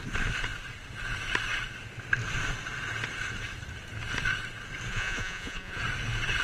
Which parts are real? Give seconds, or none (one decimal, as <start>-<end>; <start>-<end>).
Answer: 0.0-4.9; 5.8-6.4